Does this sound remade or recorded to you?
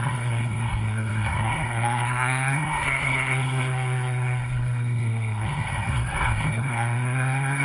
remade